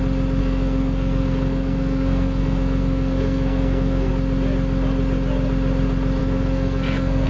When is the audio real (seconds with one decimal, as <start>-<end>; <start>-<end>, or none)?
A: 0.0-0.4; 4.1-6.2

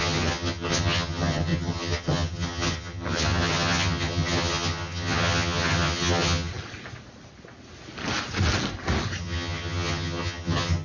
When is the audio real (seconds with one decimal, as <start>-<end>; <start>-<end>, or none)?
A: 6.5-9.2